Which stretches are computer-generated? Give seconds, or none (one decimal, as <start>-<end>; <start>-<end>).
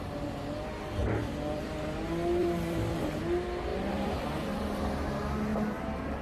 1.0-2.0; 2.4-3.2; 3.7-4.9